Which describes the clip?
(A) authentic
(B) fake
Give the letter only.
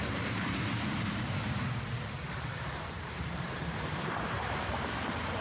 B